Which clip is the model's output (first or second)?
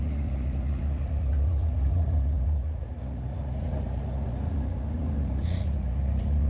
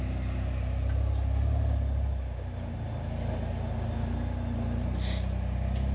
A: first